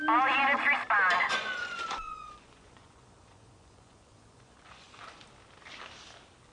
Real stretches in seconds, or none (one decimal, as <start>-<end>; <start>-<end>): 0.0-1.3; 5.2-6.5